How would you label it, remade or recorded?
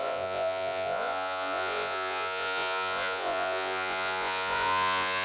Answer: remade